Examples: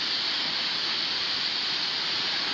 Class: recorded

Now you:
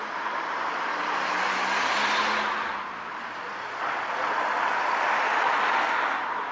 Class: recorded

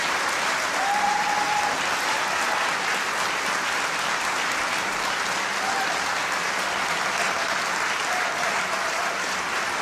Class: recorded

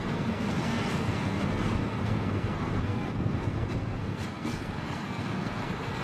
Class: remade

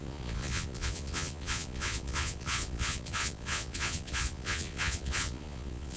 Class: remade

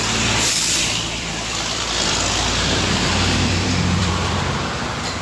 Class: remade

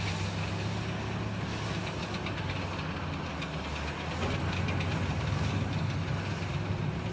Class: recorded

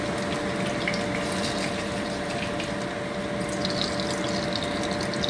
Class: recorded